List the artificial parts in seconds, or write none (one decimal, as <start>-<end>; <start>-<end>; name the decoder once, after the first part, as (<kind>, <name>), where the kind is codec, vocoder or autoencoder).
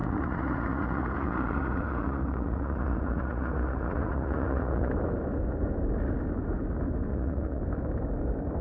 0.0-4.9 (vocoder, Vocos); 7.1-7.6